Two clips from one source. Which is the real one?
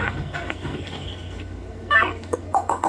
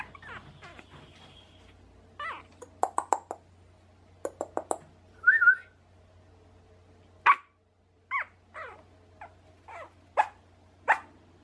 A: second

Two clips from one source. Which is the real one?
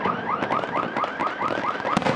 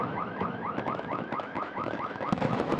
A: first